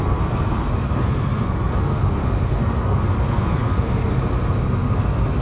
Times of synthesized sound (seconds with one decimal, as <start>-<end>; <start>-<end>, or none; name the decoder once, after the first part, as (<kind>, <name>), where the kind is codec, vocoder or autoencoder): 0.0-5.4 (codec, SNAC)